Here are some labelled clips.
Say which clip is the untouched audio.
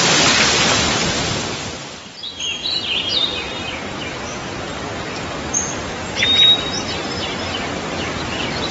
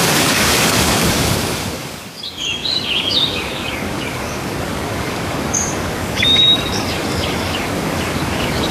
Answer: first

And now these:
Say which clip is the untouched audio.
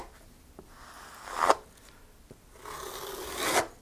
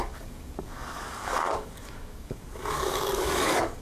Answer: first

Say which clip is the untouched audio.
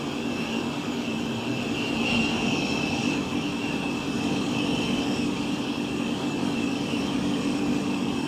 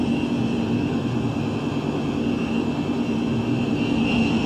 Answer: second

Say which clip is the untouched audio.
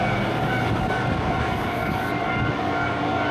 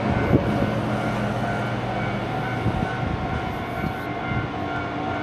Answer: second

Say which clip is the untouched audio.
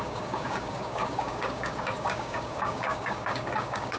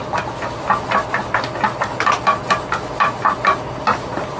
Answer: second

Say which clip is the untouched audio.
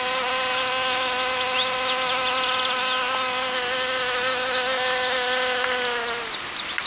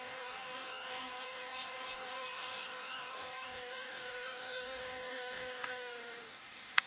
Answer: first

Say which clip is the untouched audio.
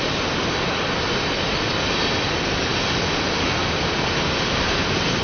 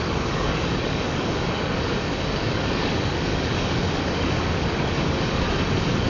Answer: first